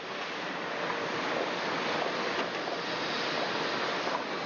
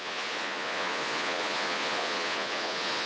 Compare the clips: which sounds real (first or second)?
first